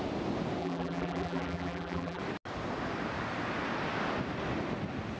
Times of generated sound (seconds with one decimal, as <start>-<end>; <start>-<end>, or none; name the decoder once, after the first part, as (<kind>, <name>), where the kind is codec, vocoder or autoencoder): 0.6-2.2 (vocoder, BigVGAN v2)